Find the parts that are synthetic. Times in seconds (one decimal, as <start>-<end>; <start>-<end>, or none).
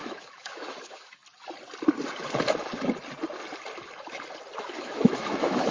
0.0-1.2; 4.6-5.7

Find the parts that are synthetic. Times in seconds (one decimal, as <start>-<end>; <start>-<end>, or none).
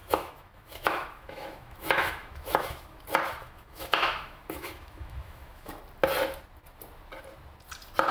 0.0-3.0; 3.4-5.8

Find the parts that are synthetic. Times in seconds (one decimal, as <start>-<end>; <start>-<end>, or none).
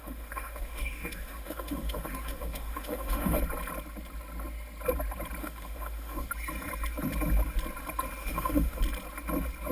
0.0-3.4; 5.4-6.3; 8.2-8.8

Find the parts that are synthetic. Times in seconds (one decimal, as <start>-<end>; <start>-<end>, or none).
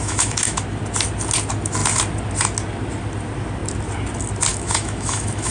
0.0-0.6; 4.5-5.5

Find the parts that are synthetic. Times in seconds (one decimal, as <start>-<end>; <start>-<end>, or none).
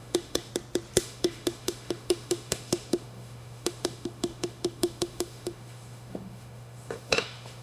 0.0-0.5; 1.0-7.6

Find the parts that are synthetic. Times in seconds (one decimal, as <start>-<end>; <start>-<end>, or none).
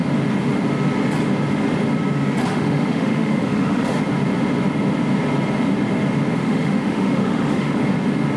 2.5-4.0; 6.4-7.8